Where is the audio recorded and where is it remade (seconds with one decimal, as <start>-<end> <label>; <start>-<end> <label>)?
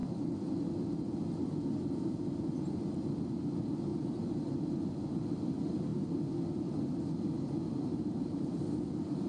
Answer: 0.0-3.9 recorded; 3.9-4.4 remade; 4.4-7.9 recorded; 7.9-8.6 remade; 8.6-9.3 recorded